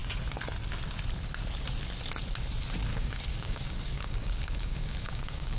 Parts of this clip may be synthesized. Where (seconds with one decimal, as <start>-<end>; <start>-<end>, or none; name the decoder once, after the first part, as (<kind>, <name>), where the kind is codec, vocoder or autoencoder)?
2.9-5.6 (codec, DAC)